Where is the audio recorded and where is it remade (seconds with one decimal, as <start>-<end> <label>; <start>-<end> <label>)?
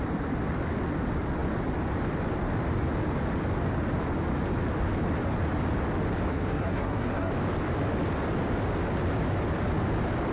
0.0-6.3 recorded; 6.3-7.3 remade; 7.3-10.3 recorded